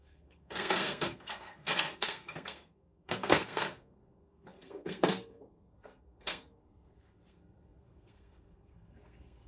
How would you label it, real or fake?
fake